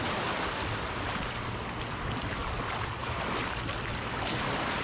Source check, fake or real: real